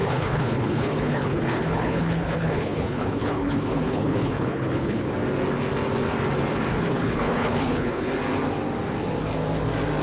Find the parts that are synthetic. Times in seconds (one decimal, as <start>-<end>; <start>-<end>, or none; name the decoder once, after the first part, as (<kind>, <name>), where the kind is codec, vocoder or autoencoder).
0.0-5.1 (codec, HILCodec); 6.7-8.1